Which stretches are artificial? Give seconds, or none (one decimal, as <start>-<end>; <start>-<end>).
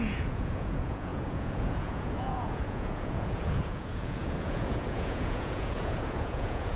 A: 0.0-6.8